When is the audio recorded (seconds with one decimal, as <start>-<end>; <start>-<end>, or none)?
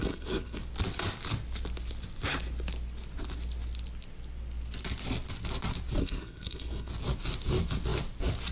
0.6-6.0; 6.9-8.5